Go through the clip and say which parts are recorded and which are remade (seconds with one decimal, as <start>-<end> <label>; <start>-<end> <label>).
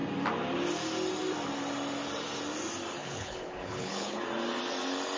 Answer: 0.0-3.0 recorded; 3.0-4.2 remade; 4.2-5.2 recorded